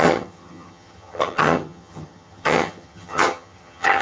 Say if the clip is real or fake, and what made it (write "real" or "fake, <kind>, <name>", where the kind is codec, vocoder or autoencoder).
fake, vocoder, HiFi-GAN